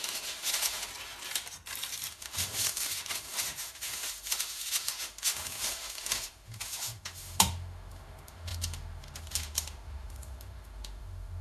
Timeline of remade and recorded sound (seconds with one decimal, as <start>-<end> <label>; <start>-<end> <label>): 0.0-0.9 remade; 0.9-2.1 recorded; 2.1-11.4 remade